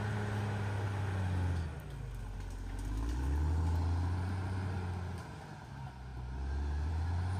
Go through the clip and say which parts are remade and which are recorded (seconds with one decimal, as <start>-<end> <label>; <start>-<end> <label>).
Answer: 0.0-7.4 recorded